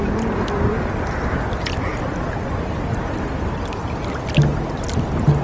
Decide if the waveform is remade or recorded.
recorded